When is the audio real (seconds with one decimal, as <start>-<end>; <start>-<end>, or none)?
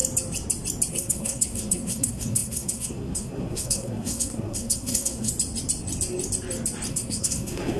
0.0-0.9; 5.3-6.9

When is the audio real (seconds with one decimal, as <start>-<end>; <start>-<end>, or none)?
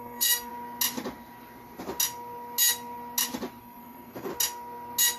0.5-3.6; 4.3-5.2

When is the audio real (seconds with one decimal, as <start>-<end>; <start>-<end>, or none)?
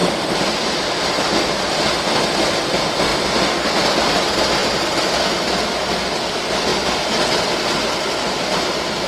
1.7-4.6; 5.1-9.1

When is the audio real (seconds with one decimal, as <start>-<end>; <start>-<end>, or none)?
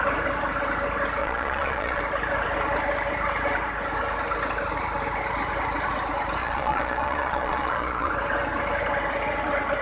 0.0-1.2; 2.0-6.4; 8.1-9.8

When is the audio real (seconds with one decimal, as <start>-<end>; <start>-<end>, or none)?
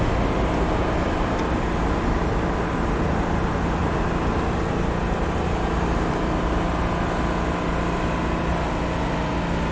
0.0-9.7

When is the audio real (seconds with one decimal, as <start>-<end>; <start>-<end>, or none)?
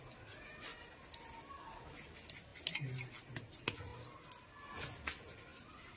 0.0-2.5; 3.1-3.9; 4.8-5.5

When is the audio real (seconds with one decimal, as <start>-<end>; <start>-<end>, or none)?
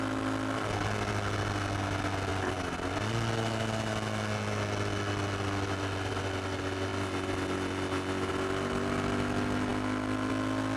0.0-10.8